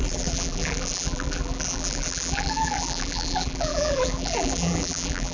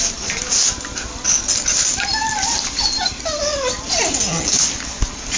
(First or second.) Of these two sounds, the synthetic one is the first